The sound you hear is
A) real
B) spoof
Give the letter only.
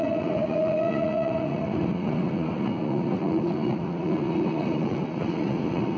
B